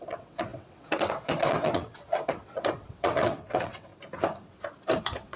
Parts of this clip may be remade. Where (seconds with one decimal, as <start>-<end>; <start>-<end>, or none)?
0.0-3.9; 5.0-5.4